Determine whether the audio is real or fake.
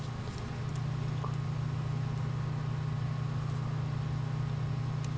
real